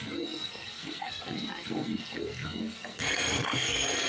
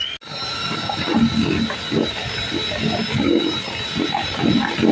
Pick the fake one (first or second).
first